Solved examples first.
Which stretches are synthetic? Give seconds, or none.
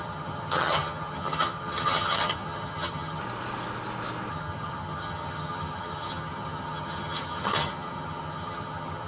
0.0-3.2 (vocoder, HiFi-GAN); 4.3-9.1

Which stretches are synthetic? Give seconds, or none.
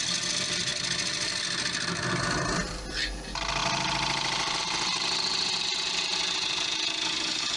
none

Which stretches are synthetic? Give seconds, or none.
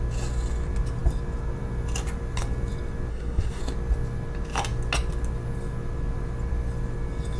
3.1-3.6 (codec, SNAC)